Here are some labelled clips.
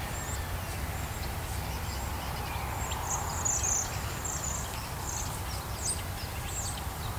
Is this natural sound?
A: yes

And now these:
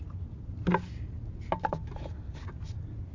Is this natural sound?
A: yes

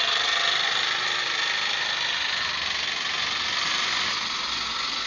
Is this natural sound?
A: yes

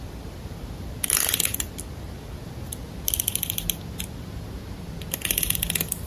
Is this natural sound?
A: yes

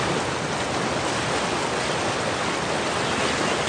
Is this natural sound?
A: yes